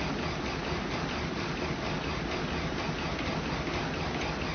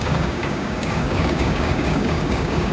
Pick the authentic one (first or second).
first